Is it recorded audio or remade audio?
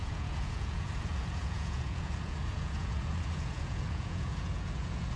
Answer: remade